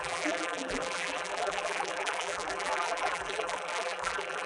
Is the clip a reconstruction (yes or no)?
yes